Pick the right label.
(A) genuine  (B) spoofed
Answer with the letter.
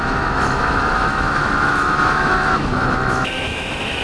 B